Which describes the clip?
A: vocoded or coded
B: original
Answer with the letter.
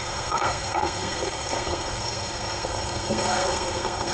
A